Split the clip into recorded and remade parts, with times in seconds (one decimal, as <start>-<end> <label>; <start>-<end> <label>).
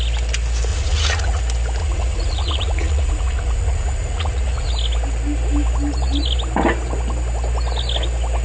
0.0-0.7 recorded; 0.7-1.4 remade; 1.4-1.8 recorded; 1.8-4.7 remade; 4.7-8.4 recorded